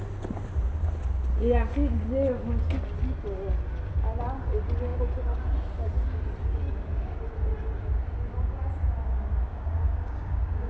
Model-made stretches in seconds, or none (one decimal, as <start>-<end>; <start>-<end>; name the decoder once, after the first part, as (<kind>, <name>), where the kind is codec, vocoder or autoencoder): 9.5-10.7 (codec, DAC)